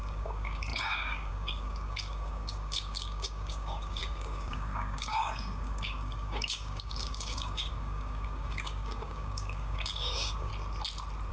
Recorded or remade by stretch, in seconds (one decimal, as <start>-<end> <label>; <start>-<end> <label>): 0.0-10.5 remade; 10.5-11.3 recorded